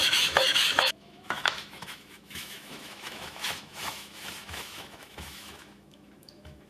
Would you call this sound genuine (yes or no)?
no